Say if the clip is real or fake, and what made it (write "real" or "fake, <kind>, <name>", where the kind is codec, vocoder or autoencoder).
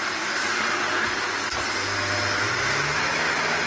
real